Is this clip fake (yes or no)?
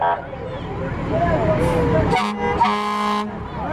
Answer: no